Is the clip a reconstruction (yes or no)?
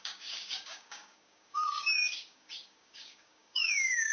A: yes